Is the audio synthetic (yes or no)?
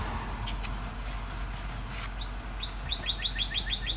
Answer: no